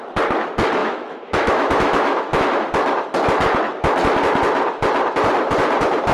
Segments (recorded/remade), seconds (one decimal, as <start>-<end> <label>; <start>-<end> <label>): 0.0-0.8 recorded; 0.8-2.4 remade; 2.4-6.1 recorded